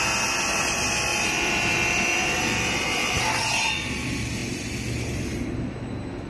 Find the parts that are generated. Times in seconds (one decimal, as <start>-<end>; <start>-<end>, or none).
0.0-4.4; 4.9-6.3